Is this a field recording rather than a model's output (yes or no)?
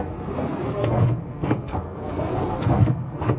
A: no